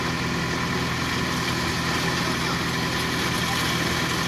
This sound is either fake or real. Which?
real